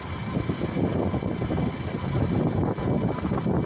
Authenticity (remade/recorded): recorded